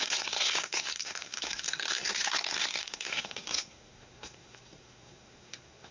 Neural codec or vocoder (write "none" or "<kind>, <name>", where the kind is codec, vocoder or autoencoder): codec, SNAC